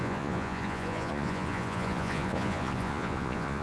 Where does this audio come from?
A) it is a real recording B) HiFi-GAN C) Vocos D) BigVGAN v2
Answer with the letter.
C